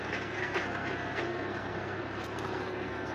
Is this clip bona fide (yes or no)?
no